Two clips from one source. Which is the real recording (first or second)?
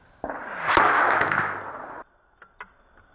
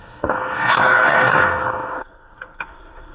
first